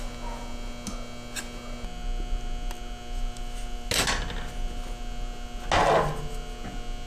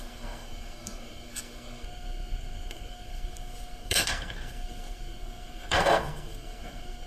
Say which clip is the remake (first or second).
second